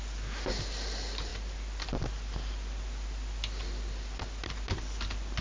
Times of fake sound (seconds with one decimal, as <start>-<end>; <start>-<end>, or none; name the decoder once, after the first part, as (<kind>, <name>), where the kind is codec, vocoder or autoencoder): none